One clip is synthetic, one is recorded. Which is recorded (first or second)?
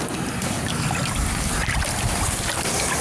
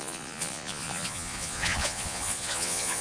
first